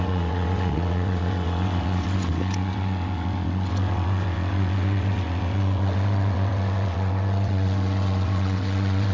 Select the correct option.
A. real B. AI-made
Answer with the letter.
B